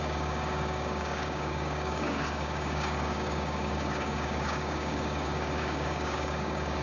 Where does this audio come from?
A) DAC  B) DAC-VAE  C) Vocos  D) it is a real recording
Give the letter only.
A